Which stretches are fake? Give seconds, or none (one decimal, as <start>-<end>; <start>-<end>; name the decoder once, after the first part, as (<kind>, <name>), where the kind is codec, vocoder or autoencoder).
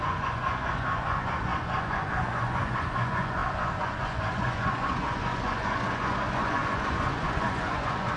0.0-8.2 (vocoder, Vocos)